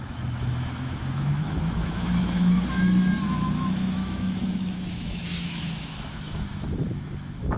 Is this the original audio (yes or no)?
no